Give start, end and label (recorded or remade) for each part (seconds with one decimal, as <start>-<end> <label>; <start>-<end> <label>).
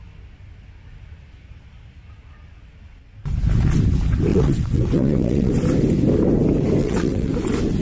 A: 0.0-4.3 recorded; 4.3-5.5 remade; 5.5-6.8 recorded; 6.8-7.3 remade; 7.3-7.8 recorded